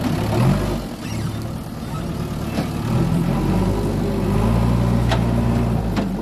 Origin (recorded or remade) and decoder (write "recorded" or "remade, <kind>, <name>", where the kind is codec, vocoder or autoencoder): recorded